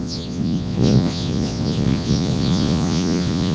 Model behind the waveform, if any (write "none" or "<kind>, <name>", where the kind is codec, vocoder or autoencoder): vocoder, Vocos